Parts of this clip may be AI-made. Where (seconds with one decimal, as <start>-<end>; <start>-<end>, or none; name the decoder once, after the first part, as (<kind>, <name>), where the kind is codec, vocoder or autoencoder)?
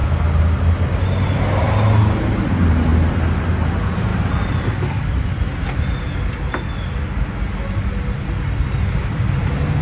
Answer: none